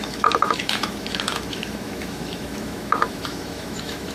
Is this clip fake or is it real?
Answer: fake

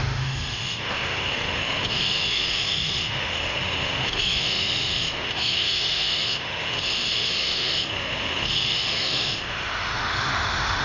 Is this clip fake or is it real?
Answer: fake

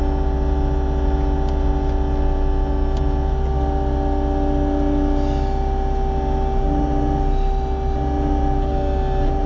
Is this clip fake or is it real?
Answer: real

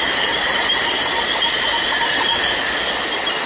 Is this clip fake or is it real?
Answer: real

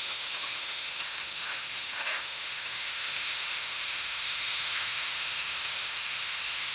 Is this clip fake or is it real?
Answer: fake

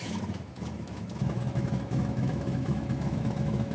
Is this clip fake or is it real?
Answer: fake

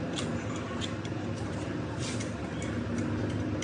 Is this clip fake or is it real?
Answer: real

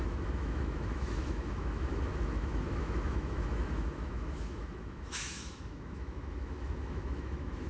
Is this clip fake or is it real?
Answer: fake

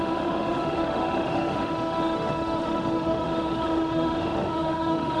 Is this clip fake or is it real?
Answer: fake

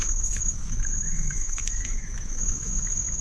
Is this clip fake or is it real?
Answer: fake